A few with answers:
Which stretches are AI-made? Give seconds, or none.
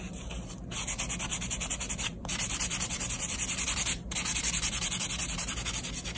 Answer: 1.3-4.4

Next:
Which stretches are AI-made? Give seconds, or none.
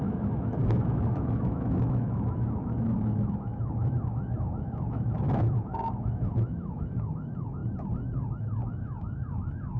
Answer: 0.0-7.6; 8.4-9.8